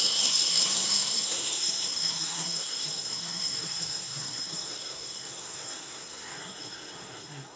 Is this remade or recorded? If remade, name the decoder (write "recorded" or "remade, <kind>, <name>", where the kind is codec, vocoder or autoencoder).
remade, codec, SNAC